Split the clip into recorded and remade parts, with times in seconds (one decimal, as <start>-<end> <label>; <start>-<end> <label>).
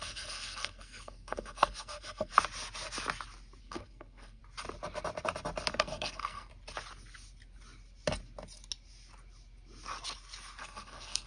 0.0-2.3 remade; 2.3-3.6 recorded; 3.6-4.4 remade; 4.4-5.7 recorded; 5.7-6.5 remade; 6.5-10.6 recorded; 10.6-11.3 remade